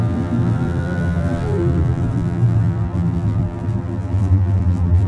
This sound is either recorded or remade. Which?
remade